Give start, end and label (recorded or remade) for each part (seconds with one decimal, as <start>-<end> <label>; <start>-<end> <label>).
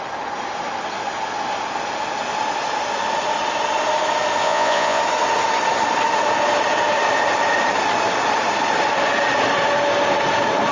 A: 0.0-4.4 recorded; 4.4-5.0 remade; 5.0-10.7 recorded